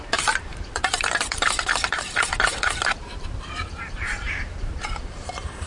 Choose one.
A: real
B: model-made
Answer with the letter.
B